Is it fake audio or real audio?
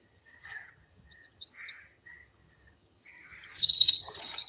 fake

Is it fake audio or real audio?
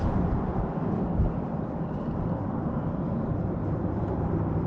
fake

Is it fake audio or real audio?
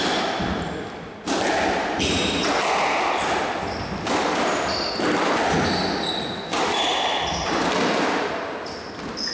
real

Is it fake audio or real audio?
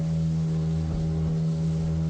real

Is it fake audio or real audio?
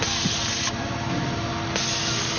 real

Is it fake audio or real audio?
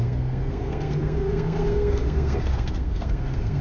fake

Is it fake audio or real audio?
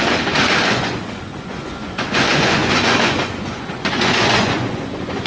fake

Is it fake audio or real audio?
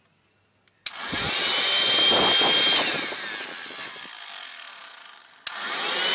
real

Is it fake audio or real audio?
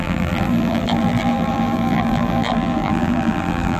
fake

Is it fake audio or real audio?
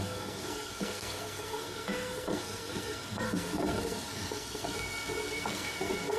fake